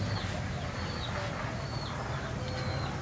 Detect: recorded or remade recorded